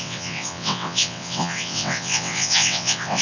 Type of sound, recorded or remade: remade